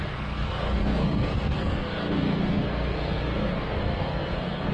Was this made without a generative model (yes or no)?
no